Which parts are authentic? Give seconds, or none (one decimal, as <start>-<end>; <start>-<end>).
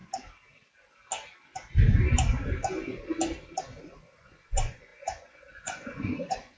0.0-3.8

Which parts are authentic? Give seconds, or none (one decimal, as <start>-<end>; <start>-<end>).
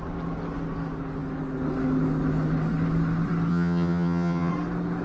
0.0-3.5; 4.5-5.0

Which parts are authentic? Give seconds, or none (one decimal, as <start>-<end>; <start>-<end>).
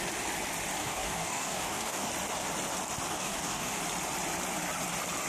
0.0-0.8; 2.1-3.1; 3.8-5.3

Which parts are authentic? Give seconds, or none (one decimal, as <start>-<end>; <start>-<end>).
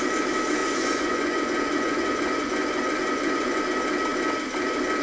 0.0-0.6; 3.6-5.0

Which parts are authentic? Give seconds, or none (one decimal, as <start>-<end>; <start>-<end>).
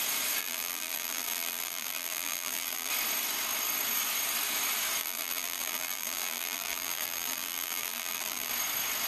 0.0-0.4; 2.9-5.0; 8.5-9.1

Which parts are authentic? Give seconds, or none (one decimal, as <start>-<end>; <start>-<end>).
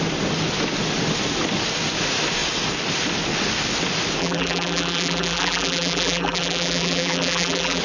0.0-4.2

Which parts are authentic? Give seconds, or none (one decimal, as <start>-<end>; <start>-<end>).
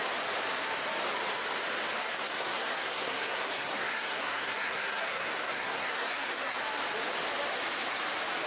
0.0-2.0; 6.6-8.5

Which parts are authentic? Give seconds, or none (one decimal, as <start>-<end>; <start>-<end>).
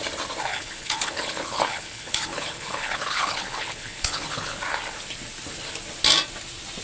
0.0-0.5; 4.6-6.8